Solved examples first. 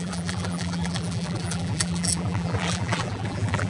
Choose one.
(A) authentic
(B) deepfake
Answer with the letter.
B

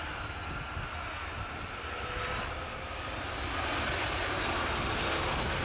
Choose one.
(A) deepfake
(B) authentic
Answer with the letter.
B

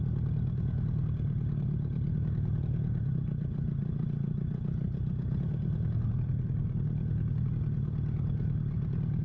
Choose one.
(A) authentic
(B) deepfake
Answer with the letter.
A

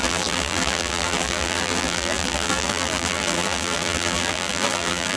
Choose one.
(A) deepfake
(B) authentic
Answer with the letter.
A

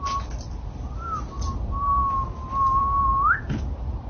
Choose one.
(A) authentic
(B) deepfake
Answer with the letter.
A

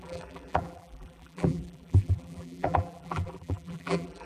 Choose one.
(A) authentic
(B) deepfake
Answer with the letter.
B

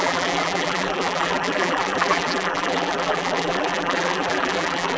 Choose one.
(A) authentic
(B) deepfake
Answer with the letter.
B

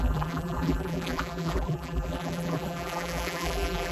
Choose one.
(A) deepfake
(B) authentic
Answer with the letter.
A